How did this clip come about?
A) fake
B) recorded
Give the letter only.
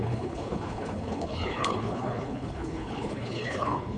A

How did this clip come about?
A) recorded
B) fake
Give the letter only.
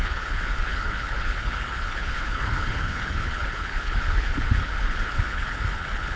B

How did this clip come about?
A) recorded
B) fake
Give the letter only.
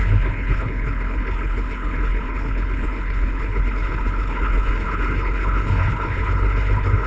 B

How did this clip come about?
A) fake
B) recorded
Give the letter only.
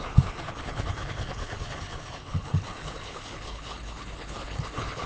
A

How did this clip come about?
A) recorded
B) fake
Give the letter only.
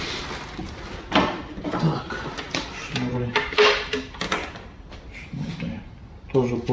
A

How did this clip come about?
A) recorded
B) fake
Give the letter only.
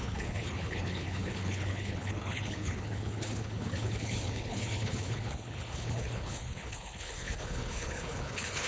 B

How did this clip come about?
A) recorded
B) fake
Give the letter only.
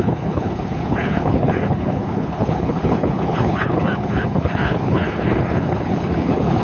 B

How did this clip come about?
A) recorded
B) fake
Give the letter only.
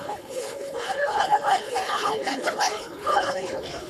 B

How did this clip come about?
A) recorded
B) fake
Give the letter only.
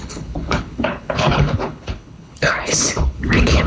B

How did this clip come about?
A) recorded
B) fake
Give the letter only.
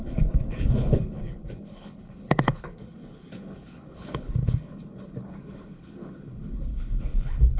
B